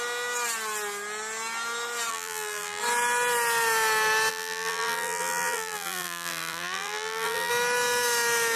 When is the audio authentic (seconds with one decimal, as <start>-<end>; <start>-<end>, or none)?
0.0-2.1; 2.8-4.3; 7.5-8.6